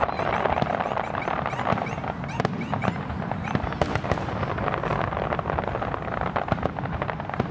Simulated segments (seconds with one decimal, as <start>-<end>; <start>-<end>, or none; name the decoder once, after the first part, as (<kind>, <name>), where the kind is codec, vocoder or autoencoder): none